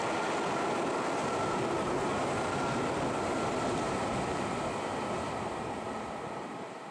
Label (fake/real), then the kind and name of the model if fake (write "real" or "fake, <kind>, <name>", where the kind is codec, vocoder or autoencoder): real